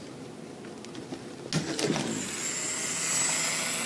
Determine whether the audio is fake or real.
real